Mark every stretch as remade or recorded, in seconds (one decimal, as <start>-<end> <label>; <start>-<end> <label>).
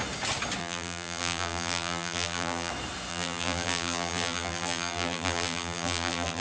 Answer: 0.0-0.6 recorded; 0.6-2.7 remade; 2.7-3.1 recorded; 3.1-6.4 remade